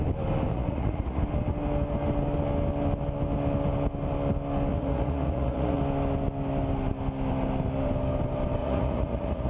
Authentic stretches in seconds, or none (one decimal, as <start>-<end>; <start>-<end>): 0.0-0.5; 1.2-4.7; 5.8-8.6

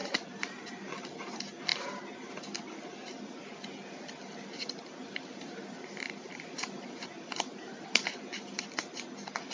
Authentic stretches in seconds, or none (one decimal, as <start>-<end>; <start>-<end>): 0.9-5.0; 8.2-9.5